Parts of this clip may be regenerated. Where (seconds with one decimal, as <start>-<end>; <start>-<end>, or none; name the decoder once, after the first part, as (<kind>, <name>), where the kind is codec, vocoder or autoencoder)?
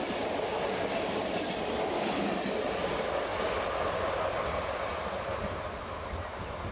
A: 4.9-6.1 (vocoder, BigVGAN v2)